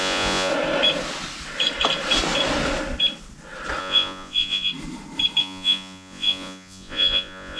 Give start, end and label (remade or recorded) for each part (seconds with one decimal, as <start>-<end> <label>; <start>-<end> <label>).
0.0-0.5 remade; 0.5-3.8 recorded; 3.8-4.7 remade; 4.7-5.4 recorded; 5.4-7.6 remade